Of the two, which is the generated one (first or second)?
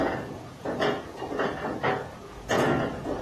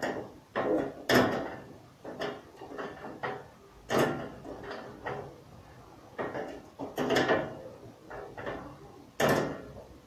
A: first